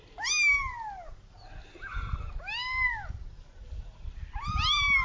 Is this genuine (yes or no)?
yes